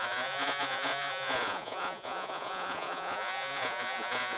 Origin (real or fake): fake